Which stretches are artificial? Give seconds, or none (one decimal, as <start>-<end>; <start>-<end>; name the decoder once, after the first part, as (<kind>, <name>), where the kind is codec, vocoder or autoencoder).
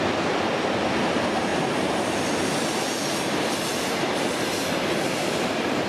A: 1.5-2.0 (vocoder, BigVGAN v2); 3.7-5.9